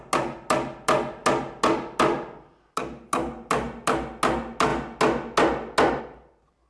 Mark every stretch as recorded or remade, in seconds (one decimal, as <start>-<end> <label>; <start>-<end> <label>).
0.0-6.7 recorded